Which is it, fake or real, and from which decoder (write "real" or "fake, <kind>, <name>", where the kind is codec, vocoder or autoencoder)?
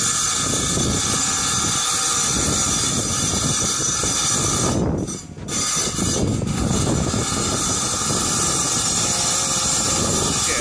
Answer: real